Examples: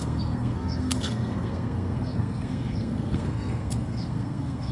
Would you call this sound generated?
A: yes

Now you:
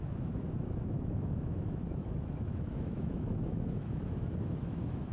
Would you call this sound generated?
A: yes